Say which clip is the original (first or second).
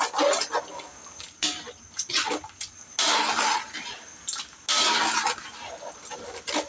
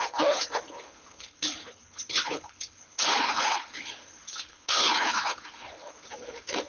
first